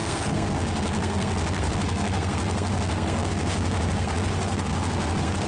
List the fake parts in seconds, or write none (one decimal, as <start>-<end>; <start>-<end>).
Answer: 0.0-5.5